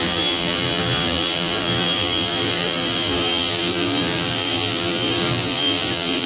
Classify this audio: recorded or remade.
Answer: remade